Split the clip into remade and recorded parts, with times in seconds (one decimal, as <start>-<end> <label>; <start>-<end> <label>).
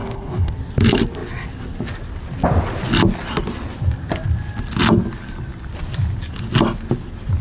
0.0-0.5 remade; 0.5-7.4 recorded